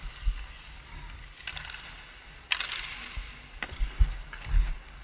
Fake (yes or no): no